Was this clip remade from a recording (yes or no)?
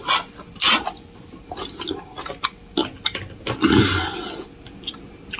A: no